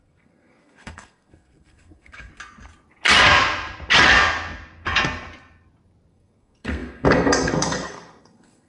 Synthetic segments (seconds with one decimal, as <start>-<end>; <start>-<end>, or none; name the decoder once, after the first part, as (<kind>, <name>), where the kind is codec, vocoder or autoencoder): 0.0-2.3 (codec, SNAC); 6.1-8.7

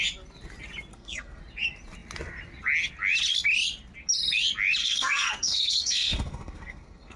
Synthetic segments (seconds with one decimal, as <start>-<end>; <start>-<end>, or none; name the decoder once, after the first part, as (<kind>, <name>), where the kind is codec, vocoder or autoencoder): 0.9-1.4 (codec, SNAC); 4.8-7.2

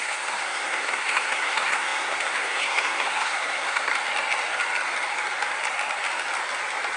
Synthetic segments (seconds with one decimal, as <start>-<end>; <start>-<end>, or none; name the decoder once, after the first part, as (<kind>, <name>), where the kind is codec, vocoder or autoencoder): 0.0-3.9 (codec, SNAC)

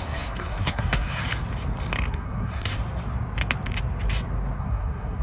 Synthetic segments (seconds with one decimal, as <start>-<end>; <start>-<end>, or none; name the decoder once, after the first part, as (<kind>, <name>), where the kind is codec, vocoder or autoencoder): 0.0-1.2 (codec, SNAC); 2.1-2.8; 4.6-5.2